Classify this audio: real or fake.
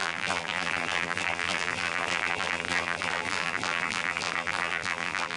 fake